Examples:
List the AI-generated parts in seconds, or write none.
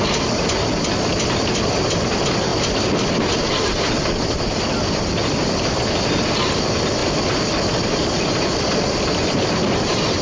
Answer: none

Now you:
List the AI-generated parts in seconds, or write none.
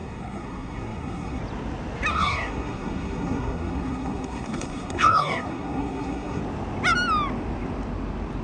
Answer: 0.0-1.4; 2.1-6.4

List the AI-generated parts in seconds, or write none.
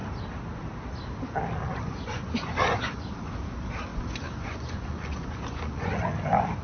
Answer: 1.6-3.0; 3.9-6.0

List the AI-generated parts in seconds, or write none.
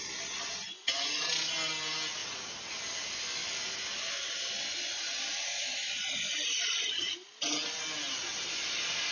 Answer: 0.6-1.2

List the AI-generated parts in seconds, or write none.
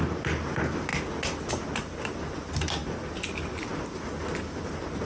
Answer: none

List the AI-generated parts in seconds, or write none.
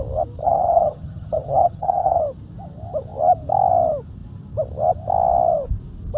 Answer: 0.4-2.2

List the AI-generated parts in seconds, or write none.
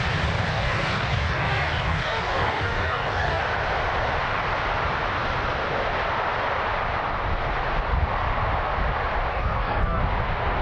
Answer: 0.5-3.4; 9.3-10.0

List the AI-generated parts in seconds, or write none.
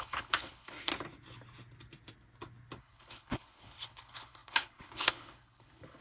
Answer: 0.0-0.9; 2.8-6.0